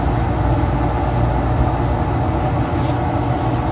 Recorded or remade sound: recorded